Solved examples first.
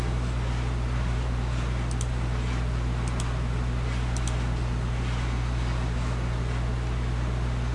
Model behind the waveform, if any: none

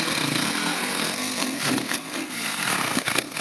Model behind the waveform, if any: codec, SNAC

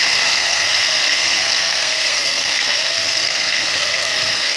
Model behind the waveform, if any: codec, SNAC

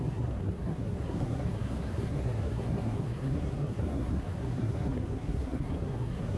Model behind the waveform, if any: codec, SNAC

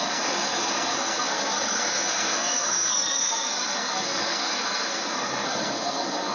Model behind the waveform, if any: codec, SNAC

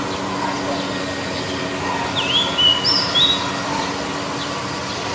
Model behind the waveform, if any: none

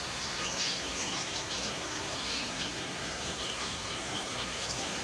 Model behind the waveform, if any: codec, SNAC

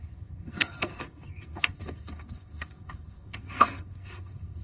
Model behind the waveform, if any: codec, SNAC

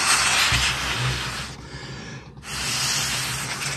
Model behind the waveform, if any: none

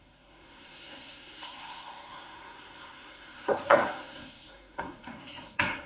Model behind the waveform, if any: codec, SNAC